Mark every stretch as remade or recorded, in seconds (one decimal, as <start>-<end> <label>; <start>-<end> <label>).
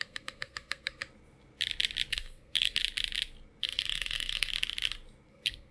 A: 0.0-1.0 remade; 1.0-2.1 recorded; 2.1-2.8 remade; 2.8-3.6 recorded; 3.6-4.5 remade; 4.5-5.3 recorded; 5.3-5.7 remade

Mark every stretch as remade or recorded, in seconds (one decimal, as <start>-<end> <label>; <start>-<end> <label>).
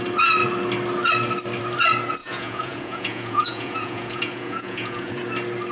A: 0.0-2.2 recorded; 2.2-5.1 remade; 5.1-5.7 recorded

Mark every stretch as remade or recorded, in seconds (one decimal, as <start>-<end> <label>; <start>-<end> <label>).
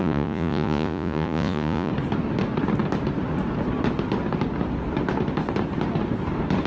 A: 0.0-1.9 remade; 1.9-6.7 recorded